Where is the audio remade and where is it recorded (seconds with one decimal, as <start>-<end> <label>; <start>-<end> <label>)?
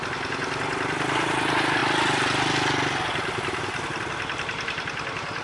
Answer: 0.0-5.4 recorded